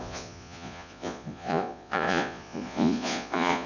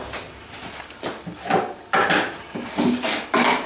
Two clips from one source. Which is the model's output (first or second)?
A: first